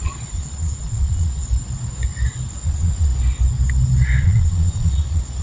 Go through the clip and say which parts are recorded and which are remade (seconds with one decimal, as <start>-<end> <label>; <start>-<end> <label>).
0.0-1.4 remade; 1.4-2.5 recorded; 2.5-3.1 remade; 3.1-4.2 recorded; 4.2-5.4 remade

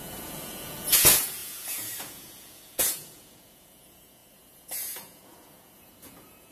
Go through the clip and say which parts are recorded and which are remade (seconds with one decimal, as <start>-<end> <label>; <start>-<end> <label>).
0.0-6.5 remade

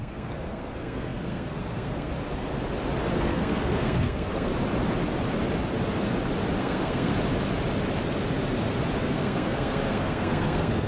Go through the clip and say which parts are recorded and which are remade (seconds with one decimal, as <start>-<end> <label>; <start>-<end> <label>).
0.0-2.1 remade; 2.1-3.1 recorded; 3.1-4.5 remade; 4.5-6.6 recorded; 6.6-7.1 remade; 7.1-9.0 recorded; 9.0-10.9 remade

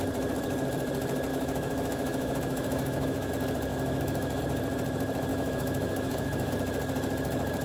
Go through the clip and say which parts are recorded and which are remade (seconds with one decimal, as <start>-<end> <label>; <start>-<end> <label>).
0.0-1.3 recorded; 1.3-3.3 remade; 3.3-3.7 recorded; 3.7-4.4 remade; 4.4-5.3 recorded; 5.3-6.5 remade; 6.5-7.6 recorded

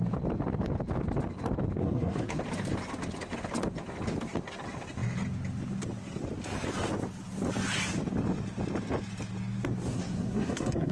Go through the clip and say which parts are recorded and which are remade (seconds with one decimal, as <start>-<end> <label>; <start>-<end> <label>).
0.0-1.8 recorded; 1.8-2.4 remade; 2.4-9.9 recorded; 9.9-10.9 remade